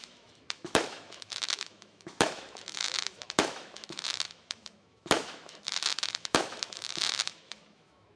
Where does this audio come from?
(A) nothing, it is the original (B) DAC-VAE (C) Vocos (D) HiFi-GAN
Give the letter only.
B